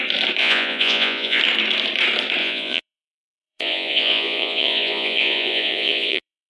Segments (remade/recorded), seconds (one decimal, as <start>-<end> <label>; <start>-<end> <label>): 0.0-0.4 recorded; 0.4-1.4 remade; 1.4-2.4 recorded; 2.4-6.5 remade